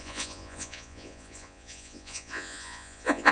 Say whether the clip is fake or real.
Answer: fake